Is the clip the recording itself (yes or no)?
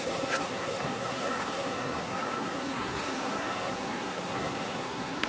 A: no